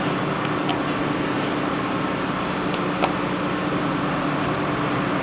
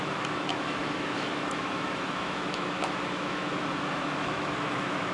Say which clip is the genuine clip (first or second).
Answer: first